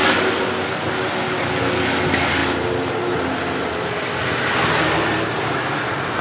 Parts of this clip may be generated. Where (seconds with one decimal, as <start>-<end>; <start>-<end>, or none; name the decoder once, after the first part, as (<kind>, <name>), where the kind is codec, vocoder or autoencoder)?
none